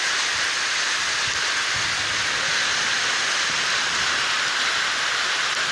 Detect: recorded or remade recorded